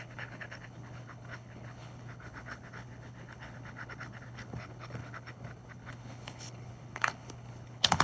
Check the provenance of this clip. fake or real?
fake